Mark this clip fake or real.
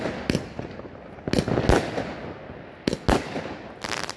real